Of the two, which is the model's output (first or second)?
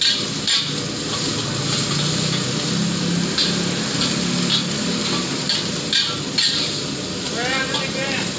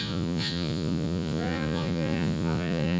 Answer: second